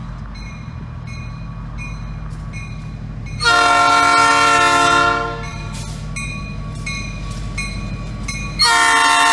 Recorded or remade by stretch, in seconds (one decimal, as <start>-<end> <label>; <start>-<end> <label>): 0.0-9.3 recorded